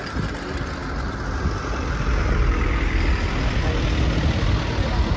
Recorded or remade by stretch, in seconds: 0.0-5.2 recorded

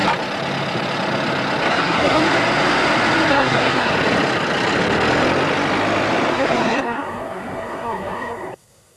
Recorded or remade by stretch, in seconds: 0.0-1.7 recorded; 1.7-2.2 remade; 2.2-3.3 recorded; 3.3-3.9 remade; 3.9-6.3 recorded; 6.3-9.0 remade